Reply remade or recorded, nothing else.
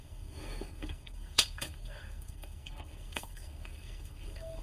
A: remade